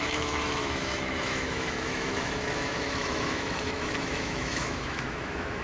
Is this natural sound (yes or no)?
no